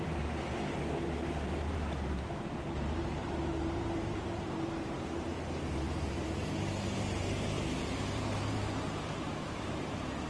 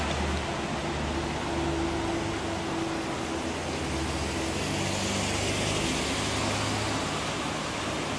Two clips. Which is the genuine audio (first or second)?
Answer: second